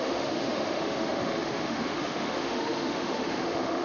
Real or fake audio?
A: fake